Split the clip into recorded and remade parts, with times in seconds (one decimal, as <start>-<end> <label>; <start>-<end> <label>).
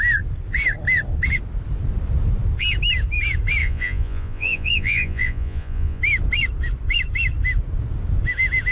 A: 0.0-3.6 recorded; 3.6-6.0 remade; 6.0-8.7 recorded